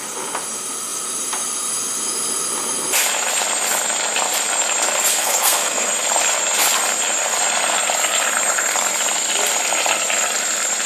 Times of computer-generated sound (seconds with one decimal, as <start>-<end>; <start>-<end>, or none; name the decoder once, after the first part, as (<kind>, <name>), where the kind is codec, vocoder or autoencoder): 5.1-5.9 (codec, SNAC)